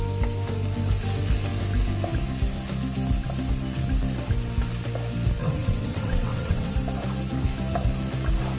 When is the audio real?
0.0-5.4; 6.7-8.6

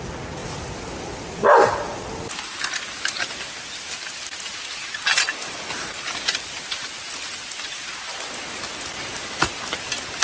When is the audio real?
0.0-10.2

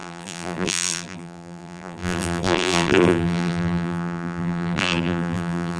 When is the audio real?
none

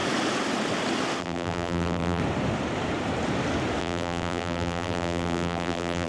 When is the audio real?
0.0-1.2; 2.2-3.8

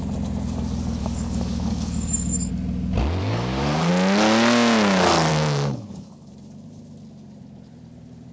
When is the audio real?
0.0-1.0; 2.5-3.2; 3.9-5.3; 6.1-8.3

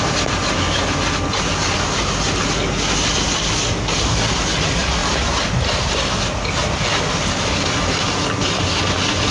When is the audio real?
0.0-9.3